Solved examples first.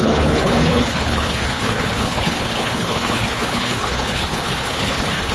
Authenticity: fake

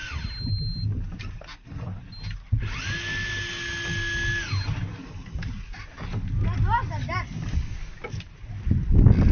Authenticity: real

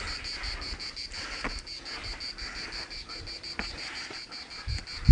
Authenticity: real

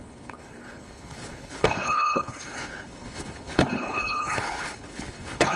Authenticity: fake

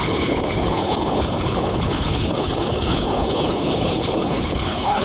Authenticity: fake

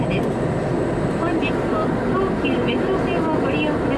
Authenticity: real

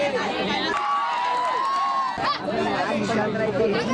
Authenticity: real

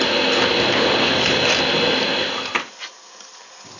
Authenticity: real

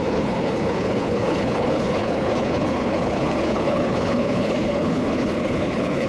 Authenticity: fake